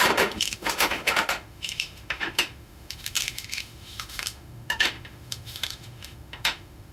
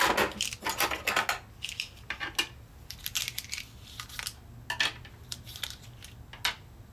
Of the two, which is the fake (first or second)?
first